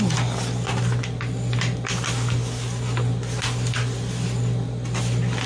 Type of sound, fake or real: real